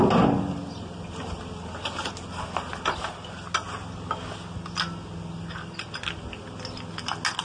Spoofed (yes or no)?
no